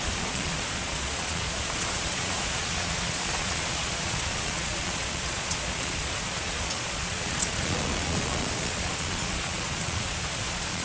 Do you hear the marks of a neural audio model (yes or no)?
yes